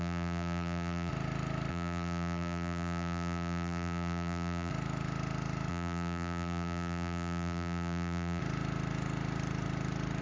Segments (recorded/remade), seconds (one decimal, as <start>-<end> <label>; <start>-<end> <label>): 0.0-1.1 remade; 1.1-1.7 recorded; 1.7-4.7 remade; 4.7-5.7 recorded; 5.7-8.4 remade; 8.4-10.2 recorded